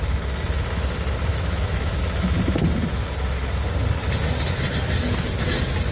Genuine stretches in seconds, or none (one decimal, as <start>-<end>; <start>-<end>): 0.0-1.3; 2.0-5.9